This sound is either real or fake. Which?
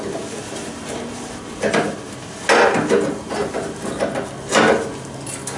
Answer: real